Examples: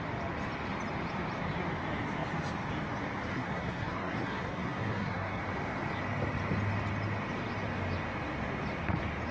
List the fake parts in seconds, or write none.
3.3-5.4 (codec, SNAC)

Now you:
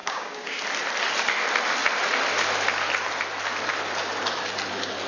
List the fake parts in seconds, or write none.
0.0-0.6 (codec, DAC)

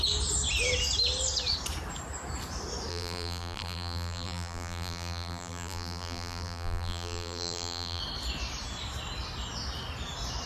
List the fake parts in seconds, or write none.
2.9-8.0 (vocoder, BigVGAN v2)

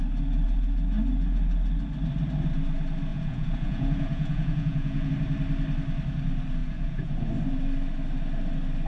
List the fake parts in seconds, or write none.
3.1-5.1 (vocoder, Vocos); 6.6-7.3